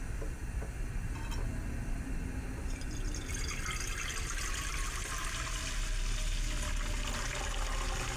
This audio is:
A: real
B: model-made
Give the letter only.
A